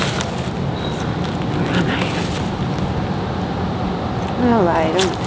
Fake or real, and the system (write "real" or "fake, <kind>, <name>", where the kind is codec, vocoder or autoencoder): real